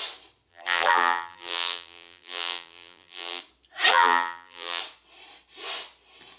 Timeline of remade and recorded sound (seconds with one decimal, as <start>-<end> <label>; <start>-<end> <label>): 0.0-0.5 recorded; 0.5-3.4 remade; 3.4-3.9 recorded; 3.9-4.8 remade; 4.8-6.4 recorded